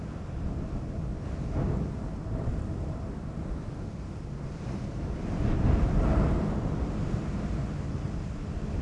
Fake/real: real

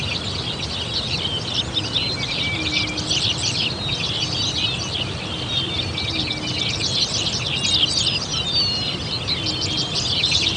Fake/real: real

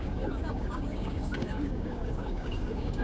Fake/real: fake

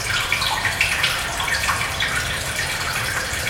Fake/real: fake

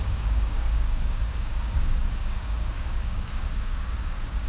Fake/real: fake